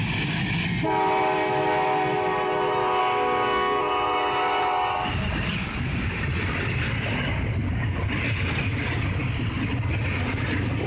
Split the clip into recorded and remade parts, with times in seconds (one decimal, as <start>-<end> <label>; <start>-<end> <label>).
0.0-3.0 recorded; 3.0-3.8 remade; 3.8-10.9 recorded